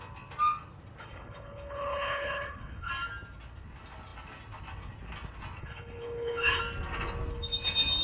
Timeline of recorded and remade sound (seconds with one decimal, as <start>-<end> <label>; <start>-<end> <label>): 0.0-1.0 recorded; 1.0-2.9 remade; 2.9-5.6 recorded; 5.6-6.6 remade; 6.6-8.0 recorded